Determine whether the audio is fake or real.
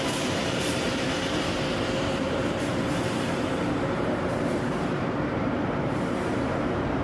fake